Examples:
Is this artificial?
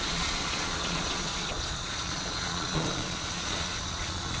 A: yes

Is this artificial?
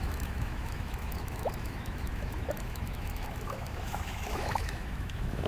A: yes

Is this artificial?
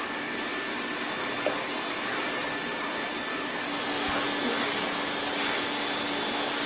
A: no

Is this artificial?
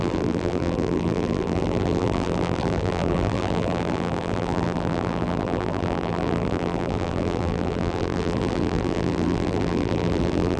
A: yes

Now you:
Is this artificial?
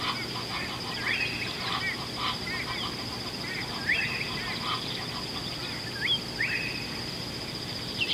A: no